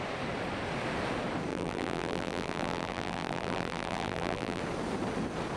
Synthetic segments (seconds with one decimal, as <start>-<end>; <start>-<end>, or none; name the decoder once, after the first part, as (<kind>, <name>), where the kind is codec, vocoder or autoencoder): 1.5-4.6 (vocoder, BigVGAN v2)